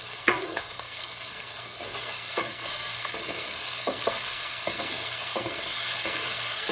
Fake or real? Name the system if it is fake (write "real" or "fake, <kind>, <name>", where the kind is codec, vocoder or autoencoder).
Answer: fake, codec, SNAC